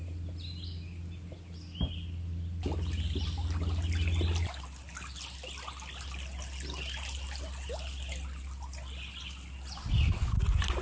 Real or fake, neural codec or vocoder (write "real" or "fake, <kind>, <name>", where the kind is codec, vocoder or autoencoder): real